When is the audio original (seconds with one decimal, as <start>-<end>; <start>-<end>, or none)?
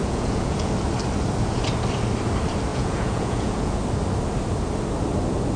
0.7-2.7; 3.8-5.6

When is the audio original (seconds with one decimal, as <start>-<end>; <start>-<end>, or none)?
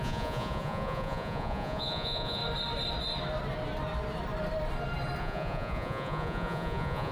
2.4-5.2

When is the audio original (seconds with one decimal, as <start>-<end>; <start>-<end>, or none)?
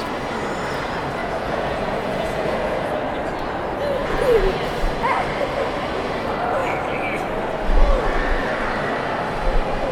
0.0-1.2; 2.8-4.0; 4.5-9.9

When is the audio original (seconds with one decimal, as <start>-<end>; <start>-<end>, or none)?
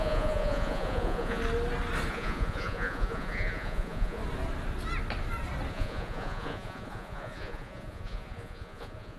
1.4-2.1; 4.2-5.7